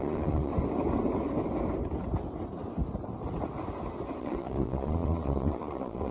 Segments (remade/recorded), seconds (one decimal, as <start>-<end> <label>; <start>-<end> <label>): 0.0-0.5 remade; 0.5-4.2 recorded; 4.2-6.1 remade